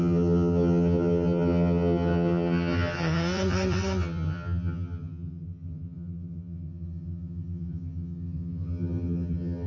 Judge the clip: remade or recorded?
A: remade